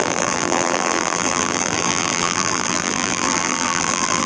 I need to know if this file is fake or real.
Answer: fake